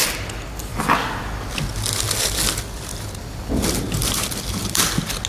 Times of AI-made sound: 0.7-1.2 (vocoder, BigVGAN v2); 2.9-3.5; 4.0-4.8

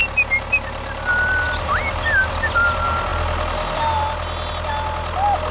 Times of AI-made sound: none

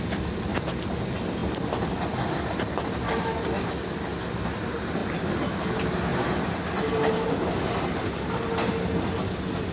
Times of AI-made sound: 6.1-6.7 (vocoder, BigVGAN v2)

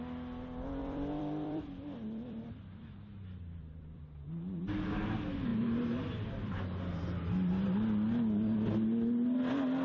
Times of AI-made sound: 0.8-4.0 (vocoder, BigVGAN v2)